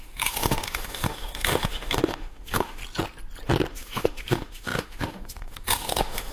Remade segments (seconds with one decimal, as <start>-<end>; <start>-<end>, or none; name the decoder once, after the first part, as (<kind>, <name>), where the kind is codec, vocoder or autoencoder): 0.0-2.8 (autoencoder, DAC-VAE); 3.7-6.3